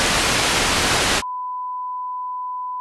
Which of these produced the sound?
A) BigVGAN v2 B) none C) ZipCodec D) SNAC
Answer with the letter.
B